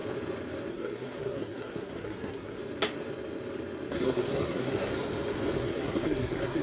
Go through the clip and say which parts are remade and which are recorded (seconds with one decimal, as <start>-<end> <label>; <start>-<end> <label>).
0.0-0.7 recorded; 0.7-2.6 remade; 2.6-3.9 recorded; 3.9-4.9 remade; 4.9-5.6 recorded; 5.6-6.6 remade